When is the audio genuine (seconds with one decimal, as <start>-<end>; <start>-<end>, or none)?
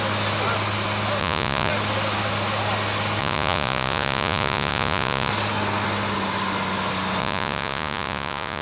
0.0-1.2; 1.7-3.2; 5.3-7.2